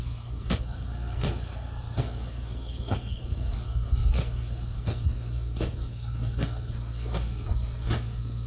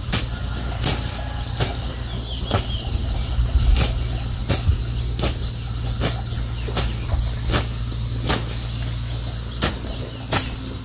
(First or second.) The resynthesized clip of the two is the first